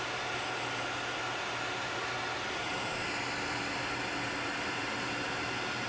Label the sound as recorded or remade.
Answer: recorded